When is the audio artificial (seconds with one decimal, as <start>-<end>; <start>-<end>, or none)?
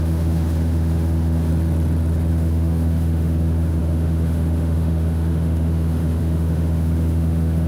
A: 0.0-1.5; 2.3-7.7